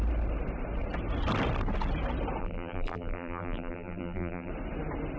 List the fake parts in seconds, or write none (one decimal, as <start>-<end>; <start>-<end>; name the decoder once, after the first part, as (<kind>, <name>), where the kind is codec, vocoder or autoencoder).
2.4-4.5 (vocoder, BigVGAN v2)